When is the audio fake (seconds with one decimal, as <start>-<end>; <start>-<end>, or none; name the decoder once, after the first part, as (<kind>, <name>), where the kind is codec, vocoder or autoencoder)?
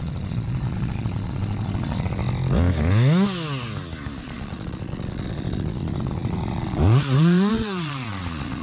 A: 0.0-2.2 (vocoder, Vocos); 4.2-8.6